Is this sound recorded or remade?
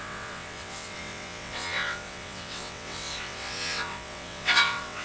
remade